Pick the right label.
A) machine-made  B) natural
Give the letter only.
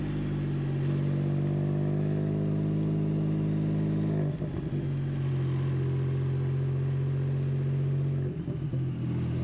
B